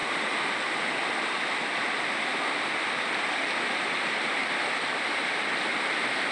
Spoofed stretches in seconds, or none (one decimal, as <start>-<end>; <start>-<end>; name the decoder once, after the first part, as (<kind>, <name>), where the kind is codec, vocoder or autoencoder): none